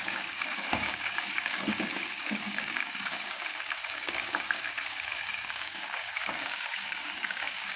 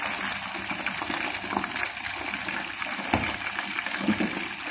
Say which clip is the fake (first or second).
first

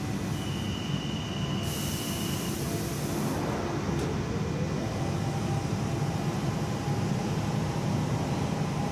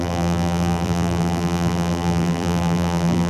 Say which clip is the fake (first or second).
second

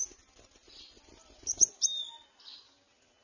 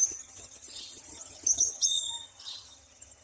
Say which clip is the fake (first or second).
second